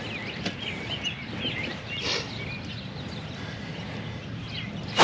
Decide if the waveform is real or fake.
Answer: real